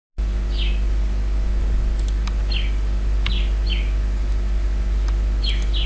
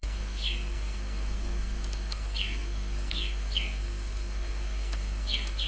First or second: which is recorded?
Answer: first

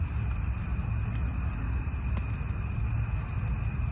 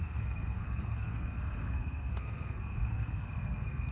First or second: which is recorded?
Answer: first